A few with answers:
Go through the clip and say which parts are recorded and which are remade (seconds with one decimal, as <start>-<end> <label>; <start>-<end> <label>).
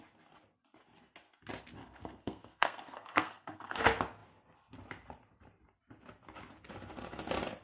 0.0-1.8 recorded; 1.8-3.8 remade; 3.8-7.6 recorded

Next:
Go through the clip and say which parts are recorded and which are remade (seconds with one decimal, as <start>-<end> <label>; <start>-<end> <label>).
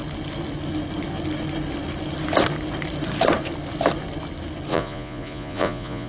0.0-4.7 recorded; 4.7-6.1 remade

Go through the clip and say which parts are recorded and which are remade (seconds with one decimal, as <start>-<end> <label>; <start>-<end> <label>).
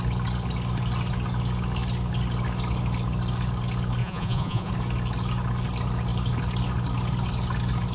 0.0-4.0 recorded; 4.0-4.7 remade; 4.7-7.9 recorded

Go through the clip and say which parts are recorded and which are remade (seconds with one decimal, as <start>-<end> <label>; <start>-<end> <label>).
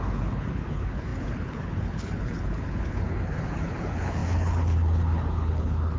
0.0-6.0 remade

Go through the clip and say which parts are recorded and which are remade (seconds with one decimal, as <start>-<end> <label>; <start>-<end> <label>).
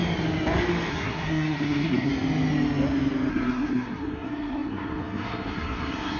0.0-0.9 recorded; 0.9-2.1 remade; 2.1-3.3 recorded; 3.3-6.2 remade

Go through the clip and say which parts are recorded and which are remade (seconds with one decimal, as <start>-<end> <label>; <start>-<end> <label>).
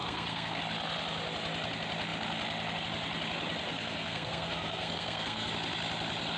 0.0-0.6 remade; 0.6-3.7 recorded; 3.7-5.5 remade; 5.5-6.4 recorded